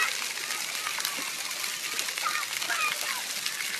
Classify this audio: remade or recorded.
recorded